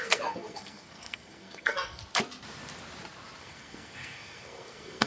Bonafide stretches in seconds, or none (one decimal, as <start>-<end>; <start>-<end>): 2.0-3.4